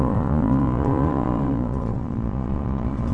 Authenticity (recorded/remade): remade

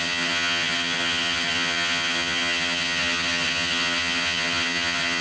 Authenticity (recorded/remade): remade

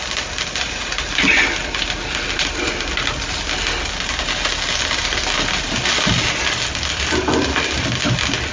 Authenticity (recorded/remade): recorded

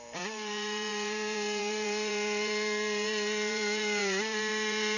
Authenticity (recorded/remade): remade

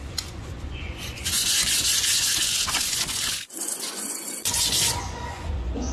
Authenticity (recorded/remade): remade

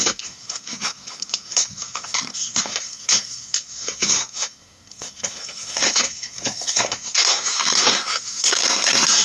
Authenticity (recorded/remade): remade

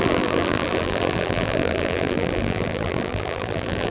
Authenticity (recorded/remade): remade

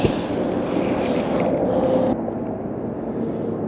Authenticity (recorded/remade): recorded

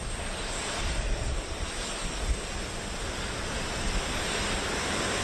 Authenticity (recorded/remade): remade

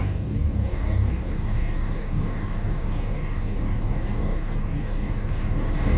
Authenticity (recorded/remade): remade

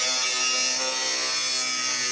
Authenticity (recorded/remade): recorded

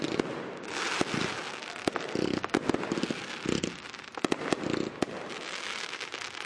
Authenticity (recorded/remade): recorded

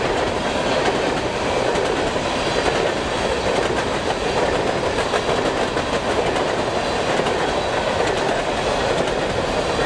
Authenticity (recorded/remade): recorded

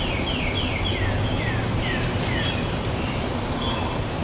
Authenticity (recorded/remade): recorded